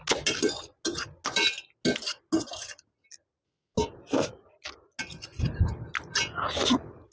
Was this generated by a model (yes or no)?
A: no